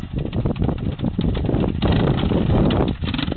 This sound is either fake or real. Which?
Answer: real